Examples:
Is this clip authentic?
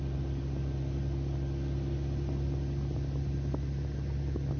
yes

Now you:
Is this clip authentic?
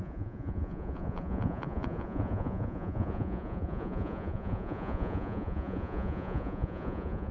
no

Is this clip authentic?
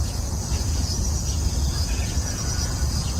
no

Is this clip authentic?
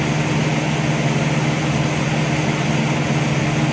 yes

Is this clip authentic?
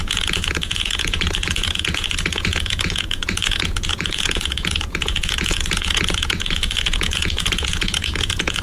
no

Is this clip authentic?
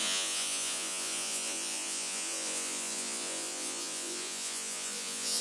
no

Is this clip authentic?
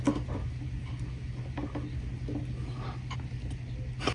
yes